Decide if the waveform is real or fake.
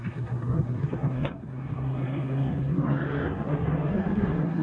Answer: fake